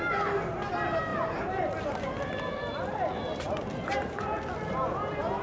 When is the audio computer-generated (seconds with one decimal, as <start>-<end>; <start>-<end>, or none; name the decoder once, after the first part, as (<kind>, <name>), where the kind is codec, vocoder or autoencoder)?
none